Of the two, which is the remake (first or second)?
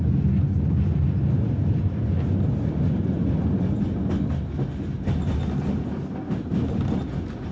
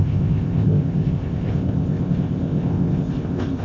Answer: second